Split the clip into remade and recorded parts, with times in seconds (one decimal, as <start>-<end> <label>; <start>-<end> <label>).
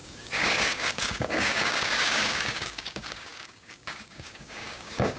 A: 0.0-5.2 remade